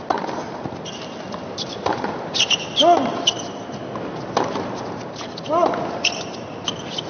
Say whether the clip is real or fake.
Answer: real